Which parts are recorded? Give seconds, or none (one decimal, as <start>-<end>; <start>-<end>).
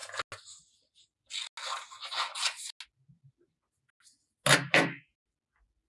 0.0-5.9